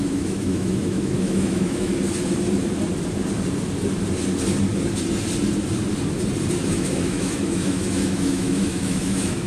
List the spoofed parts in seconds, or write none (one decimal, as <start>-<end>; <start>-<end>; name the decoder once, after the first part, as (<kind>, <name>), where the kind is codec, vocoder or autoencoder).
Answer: 0.0-1.9 (autoencoder, DAC-VAE); 6.7-9.5